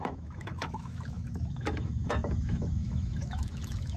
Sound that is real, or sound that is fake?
fake